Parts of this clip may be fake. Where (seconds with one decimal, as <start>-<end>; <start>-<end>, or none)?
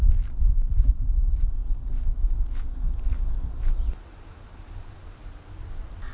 none